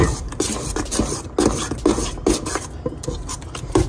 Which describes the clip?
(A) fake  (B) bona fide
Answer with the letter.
B